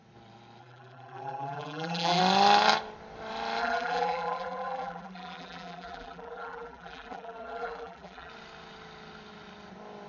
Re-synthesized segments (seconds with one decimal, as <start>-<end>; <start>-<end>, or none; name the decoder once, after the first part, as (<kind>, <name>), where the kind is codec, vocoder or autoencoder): 0.6-2.2 (vocoder, BigVGAN v2); 3.6-8.3